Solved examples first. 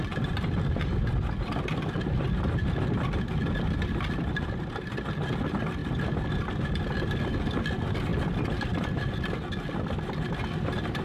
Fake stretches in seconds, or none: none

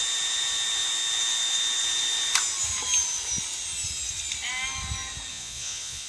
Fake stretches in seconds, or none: 5.3-6.1 (vocoder, Vocos)